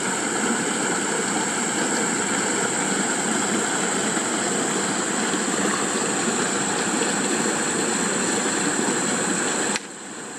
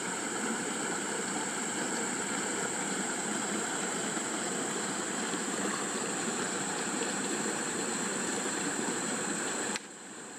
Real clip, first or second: first